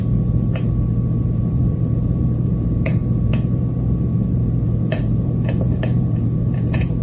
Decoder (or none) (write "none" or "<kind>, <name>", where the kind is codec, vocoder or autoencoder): vocoder, Vocos